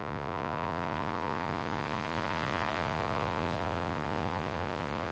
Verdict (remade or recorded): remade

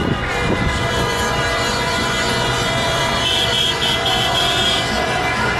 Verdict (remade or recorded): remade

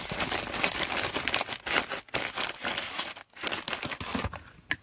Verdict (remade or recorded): recorded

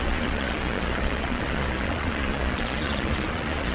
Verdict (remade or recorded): remade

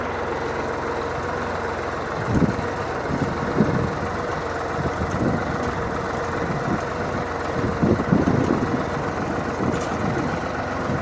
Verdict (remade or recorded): recorded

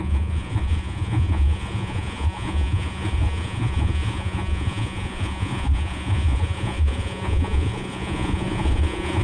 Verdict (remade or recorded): remade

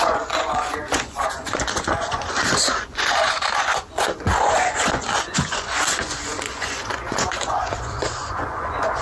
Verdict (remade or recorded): remade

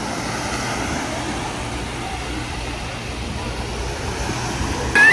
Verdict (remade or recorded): recorded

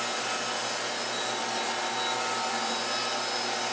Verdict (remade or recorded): recorded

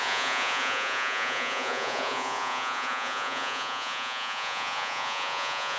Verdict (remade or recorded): remade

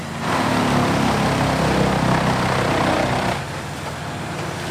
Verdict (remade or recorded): recorded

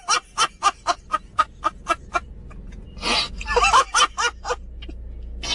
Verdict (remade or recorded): recorded